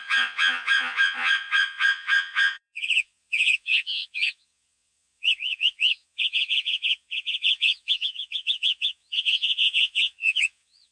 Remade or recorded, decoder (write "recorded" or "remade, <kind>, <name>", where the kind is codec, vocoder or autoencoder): remade, vocoder, Vocos